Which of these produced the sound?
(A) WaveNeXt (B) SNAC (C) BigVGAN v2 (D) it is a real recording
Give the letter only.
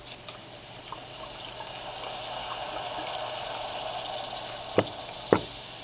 C